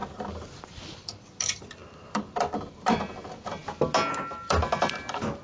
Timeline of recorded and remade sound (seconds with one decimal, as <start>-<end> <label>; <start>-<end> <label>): 0.0-1.0 recorded; 1.0-3.6 remade; 3.6-4.1 recorded; 4.1-5.4 remade